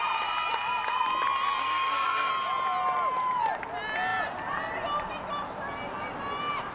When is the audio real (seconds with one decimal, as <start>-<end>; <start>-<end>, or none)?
0.0-1.6; 2.3-6.7